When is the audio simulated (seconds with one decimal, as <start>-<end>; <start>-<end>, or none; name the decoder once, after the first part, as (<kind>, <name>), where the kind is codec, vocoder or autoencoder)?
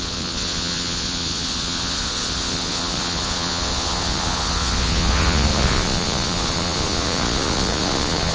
0.0-8.3 (vocoder, Vocos)